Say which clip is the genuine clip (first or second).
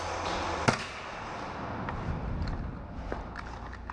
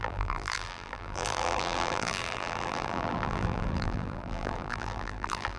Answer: first